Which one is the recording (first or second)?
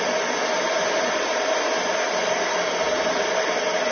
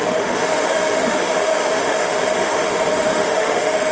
first